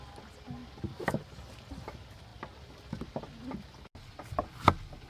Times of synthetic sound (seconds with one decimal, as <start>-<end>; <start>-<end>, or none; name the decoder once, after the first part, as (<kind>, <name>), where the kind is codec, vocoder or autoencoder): none